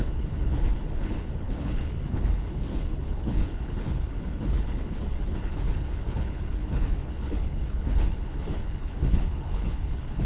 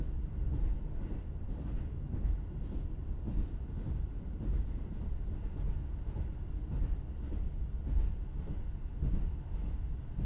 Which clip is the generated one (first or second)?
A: first